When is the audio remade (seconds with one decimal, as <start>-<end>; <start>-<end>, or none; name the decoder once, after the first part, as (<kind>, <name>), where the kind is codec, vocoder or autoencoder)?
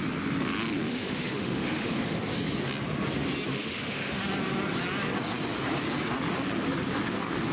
0.9-2.2 (autoencoder, DAC-VAE); 3.5-4.2